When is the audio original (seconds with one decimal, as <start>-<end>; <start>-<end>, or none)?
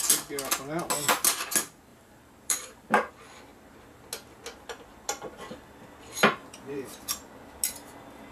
0.0-1.9; 3.1-6.4; 7.0-8.3